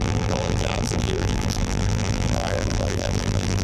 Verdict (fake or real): fake